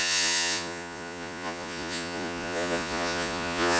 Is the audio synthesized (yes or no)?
yes